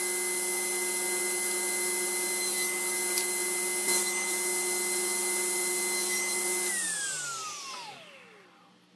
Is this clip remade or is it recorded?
recorded